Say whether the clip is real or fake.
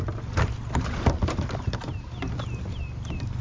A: real